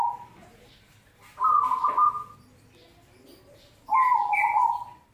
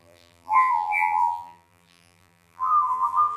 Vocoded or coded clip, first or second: second